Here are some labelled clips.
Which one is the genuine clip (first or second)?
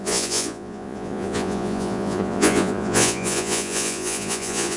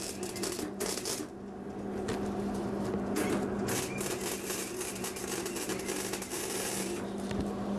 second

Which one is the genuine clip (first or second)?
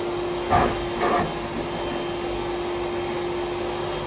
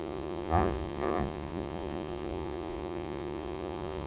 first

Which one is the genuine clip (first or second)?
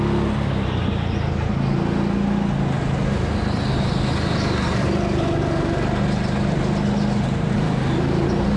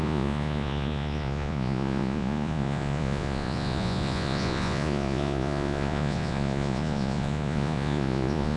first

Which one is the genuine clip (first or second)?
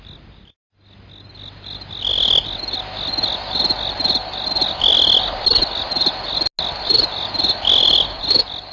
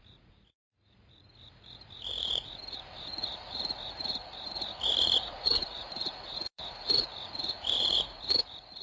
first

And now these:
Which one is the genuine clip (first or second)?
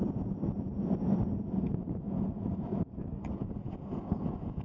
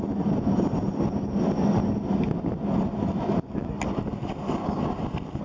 second